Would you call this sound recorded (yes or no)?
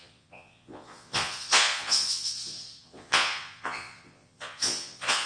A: no